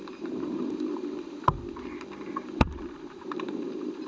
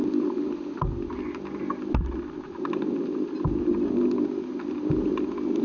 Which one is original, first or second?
second